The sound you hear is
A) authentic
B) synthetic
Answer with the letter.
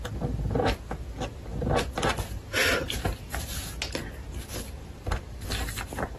A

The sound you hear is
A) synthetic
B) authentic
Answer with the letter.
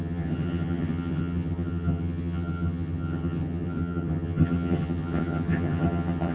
A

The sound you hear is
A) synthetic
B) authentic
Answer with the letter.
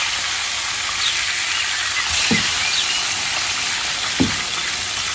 B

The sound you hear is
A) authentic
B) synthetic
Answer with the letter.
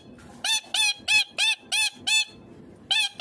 A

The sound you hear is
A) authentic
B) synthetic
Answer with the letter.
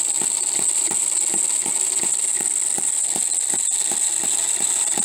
A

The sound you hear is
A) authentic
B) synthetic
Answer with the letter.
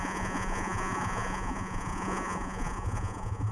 B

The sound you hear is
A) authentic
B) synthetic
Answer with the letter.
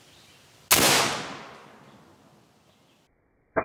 A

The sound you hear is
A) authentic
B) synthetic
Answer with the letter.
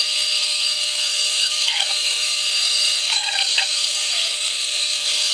B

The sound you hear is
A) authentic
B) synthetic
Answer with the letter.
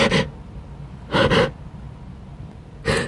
A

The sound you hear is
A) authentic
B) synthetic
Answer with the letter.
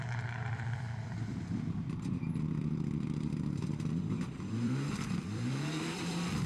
B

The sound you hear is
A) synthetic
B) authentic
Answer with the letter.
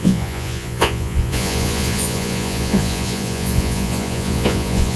A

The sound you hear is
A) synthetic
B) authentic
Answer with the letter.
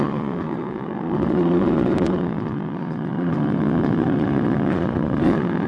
A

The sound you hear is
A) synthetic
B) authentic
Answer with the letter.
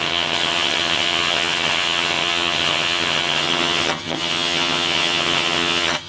A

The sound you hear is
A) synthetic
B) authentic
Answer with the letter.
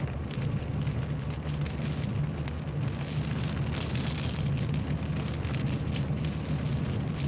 B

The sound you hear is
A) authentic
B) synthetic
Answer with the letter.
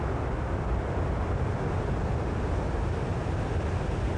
A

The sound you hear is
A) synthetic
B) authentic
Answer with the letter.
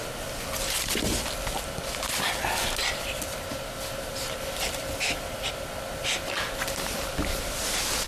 B